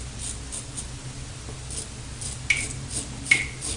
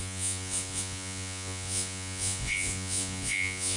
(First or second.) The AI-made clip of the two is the second